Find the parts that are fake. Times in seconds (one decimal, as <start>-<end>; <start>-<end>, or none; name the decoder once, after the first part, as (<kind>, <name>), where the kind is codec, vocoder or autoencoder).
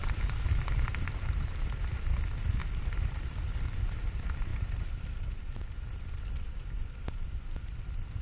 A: 0.0-0.9 (vocoder, BigVGAN v2); 2.6-3.6; 4.5-5.4